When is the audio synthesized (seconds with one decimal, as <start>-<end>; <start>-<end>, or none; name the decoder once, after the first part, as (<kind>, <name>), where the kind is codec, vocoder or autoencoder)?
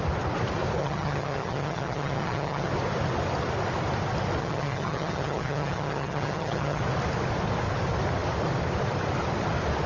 0.8-2.7 (vocoder, HiFi-GAN); 4.4-6.8